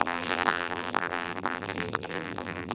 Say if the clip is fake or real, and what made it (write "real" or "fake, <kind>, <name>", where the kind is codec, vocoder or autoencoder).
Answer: fake, vocoder, BigVGAN v2